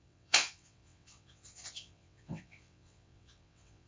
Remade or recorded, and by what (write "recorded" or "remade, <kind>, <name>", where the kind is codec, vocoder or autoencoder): remade, vocoder, WaveNeXt